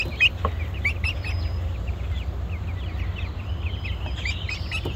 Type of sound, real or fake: real